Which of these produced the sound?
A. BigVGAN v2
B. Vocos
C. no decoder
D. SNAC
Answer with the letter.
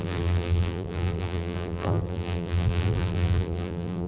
A